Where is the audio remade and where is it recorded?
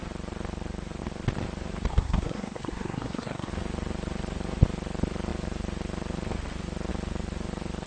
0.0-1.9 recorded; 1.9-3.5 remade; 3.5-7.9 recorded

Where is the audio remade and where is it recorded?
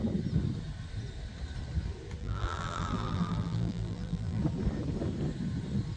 0.0-2.2 recorded; 2.2-4.4 remade; 4.4-6.0 recorded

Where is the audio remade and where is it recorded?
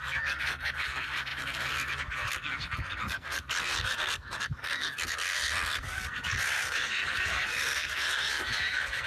0.0-9.1 remade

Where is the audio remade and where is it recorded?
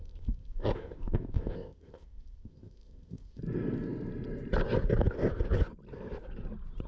0.0-3.4 remade; 3.4-6.9 recorded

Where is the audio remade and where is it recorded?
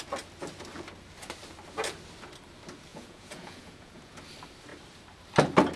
0.0-2.9 recorded; 2.9-4.2 remade; 4.2-5.8 recorded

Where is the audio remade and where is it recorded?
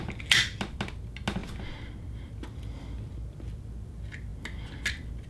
0.0-5.3 recorded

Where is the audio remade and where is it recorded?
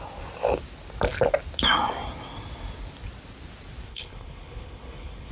0.0-3.9 recorded; 3.9-5.3 remade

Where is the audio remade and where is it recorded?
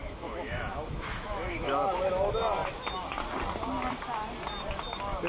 0.0-2.1 remade; 2.1-5.3 recorded